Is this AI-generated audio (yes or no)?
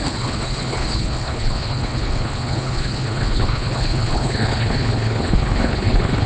yes